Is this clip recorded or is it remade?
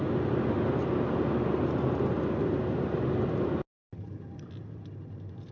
recorded